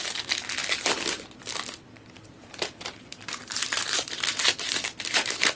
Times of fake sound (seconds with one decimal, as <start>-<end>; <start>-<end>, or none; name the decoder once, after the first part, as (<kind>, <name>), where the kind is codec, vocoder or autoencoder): 2.4-5.6 (vocoder, BigVGAN v2)